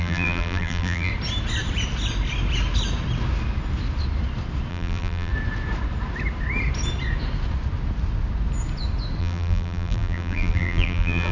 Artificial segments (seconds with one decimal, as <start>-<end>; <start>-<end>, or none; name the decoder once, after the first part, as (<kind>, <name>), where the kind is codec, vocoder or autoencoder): 0.0-1.1 (vocoder, BigVGAN v2); 4.7-5.3; 9.2-11.3